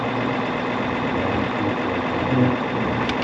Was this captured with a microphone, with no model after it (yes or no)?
yes